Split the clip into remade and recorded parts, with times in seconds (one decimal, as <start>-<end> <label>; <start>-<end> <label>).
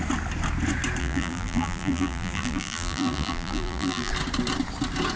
0.0-1.0 recorded; 1.0-4.1 remade; 4.1-5.2 recorded